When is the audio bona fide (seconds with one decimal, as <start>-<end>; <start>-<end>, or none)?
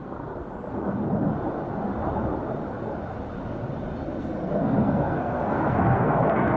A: 1.0-4.2